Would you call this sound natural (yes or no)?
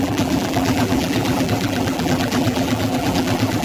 no